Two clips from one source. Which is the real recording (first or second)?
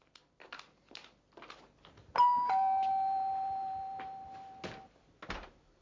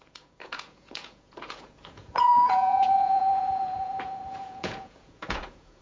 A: first